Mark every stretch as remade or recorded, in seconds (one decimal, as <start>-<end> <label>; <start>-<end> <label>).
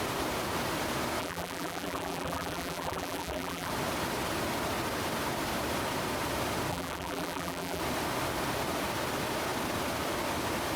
0.0-1.2 recorded; 1.2-3.7 remade; 3.7-6.7 recorded; 6.7-7.8 remade; 7.8-10.8 recorded